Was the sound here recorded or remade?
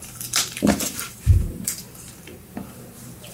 remade